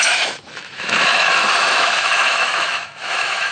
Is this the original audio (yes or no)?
no